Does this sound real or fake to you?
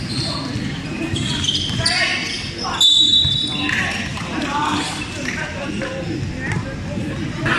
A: real